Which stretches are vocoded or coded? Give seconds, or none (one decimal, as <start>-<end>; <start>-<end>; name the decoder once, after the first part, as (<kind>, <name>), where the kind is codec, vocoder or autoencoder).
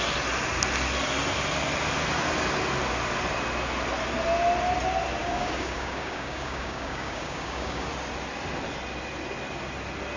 5.2-7.9 (codec, DAC)